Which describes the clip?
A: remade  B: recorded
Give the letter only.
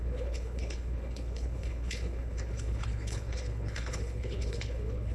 A